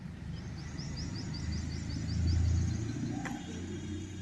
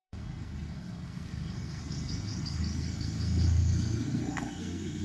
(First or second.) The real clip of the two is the first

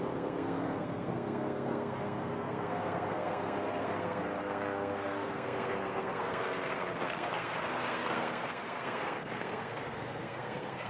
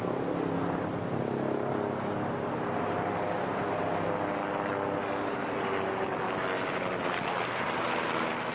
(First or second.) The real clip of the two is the second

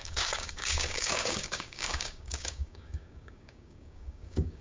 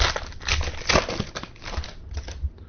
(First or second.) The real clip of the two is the second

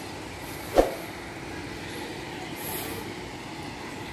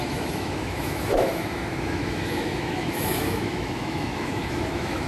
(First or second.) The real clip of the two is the first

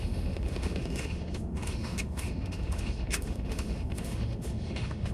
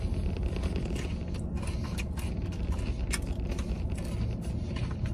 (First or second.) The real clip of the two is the second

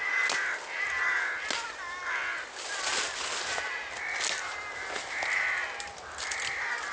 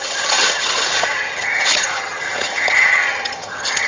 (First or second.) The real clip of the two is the first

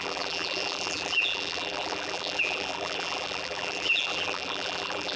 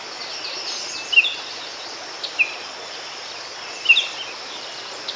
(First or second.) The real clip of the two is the second